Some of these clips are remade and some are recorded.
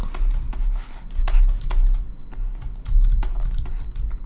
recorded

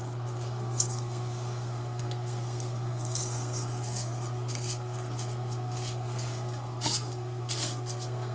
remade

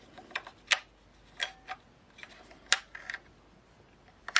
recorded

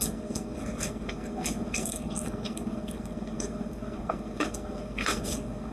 remade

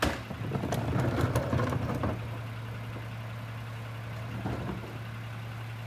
recorded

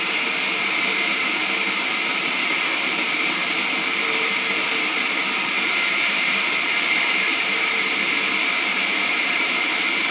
remade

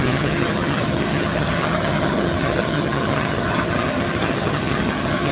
remade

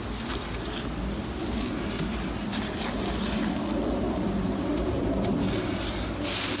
recorded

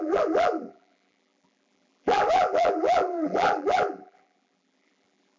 remade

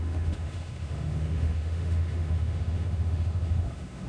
remade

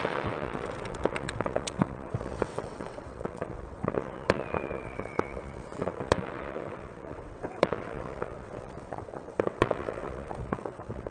remade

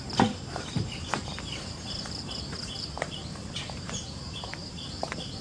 remade